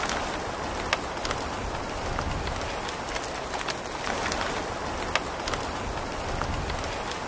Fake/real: real